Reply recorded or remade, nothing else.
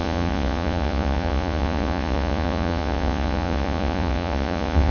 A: remade